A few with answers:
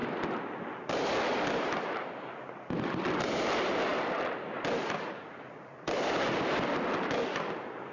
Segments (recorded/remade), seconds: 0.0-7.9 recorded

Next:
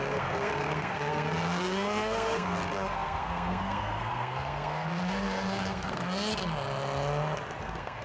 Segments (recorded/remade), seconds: 0.0-6.3 remade; 6.3-7.6 recorded; 7.6-8.0 remade

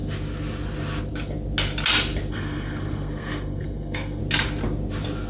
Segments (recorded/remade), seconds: 0.0-2.3 recorded; 2.3-4.2 remade; 4.2-5.3 recorded